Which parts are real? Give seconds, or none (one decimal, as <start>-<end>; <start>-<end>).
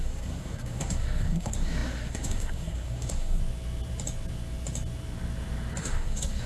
3.4-5.8